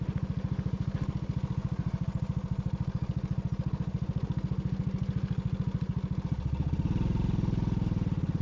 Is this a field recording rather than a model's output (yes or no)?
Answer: yes